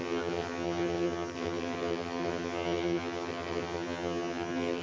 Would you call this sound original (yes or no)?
no